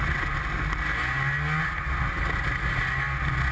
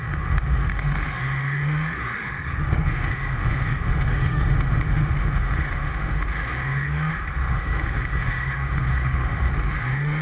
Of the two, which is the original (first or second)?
first